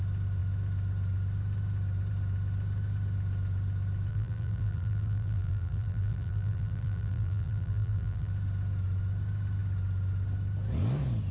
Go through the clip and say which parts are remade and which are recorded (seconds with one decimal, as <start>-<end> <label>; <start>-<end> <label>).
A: 0.0-4.1 recorded; 4.1-8.3 remade; 8.3-11.3 recorded